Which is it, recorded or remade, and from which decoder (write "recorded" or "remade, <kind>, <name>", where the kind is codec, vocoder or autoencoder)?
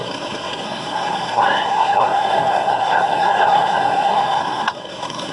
remade, codec, SNAC